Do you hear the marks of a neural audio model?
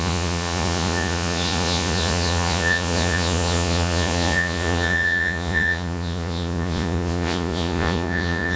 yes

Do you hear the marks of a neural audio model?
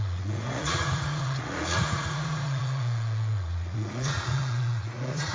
yes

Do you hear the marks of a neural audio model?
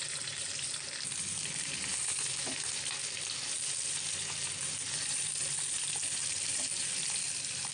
no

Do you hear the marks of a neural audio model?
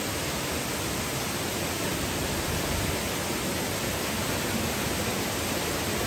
no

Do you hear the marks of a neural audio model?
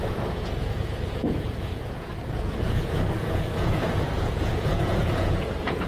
yes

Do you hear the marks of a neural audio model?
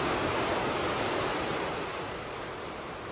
no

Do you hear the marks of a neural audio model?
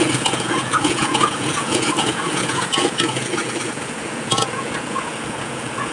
yes